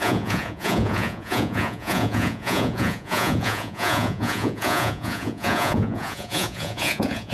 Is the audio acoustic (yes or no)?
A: no